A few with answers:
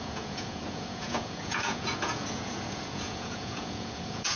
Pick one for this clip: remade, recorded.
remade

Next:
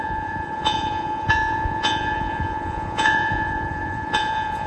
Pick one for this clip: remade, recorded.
remade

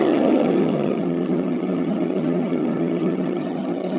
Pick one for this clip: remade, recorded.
remade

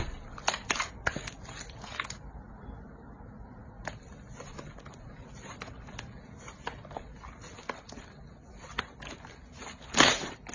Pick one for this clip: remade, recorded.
recorded